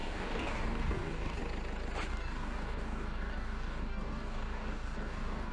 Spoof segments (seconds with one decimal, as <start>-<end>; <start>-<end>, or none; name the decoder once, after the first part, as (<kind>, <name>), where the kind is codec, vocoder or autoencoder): 0.0-1.4 (codec, DAC); 2.1-5.5